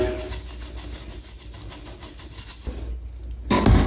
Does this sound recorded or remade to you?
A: recorded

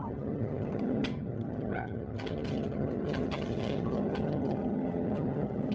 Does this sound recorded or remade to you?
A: remade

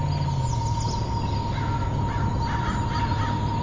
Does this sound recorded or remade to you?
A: recorded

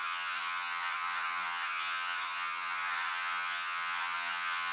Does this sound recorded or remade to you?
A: remade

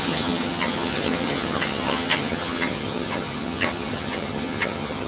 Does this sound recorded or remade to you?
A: remade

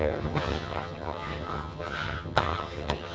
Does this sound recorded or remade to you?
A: remade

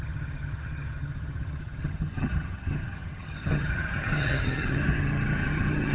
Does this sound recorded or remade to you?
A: remade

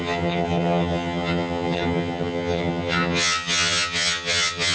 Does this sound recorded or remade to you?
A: remade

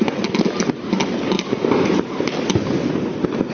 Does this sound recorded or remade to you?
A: recorded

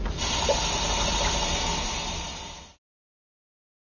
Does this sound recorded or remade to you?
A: recorded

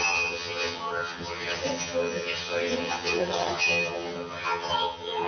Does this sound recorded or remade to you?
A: remade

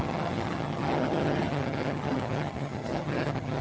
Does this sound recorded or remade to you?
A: remade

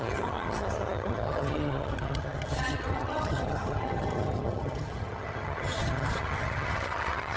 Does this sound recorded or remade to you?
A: remade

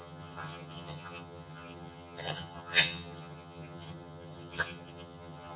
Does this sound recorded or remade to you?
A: remade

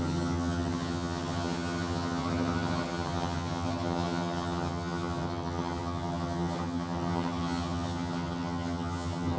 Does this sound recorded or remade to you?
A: remade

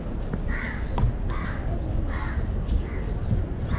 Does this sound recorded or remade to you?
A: recorded